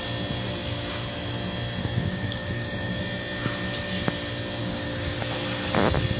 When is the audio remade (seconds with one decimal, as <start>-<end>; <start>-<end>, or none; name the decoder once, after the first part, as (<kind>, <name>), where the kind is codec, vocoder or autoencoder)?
1.8-3.0 (codec, DAC); 4.6-5.2